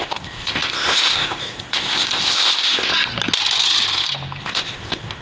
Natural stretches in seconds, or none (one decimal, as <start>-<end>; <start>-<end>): 2.9-4.4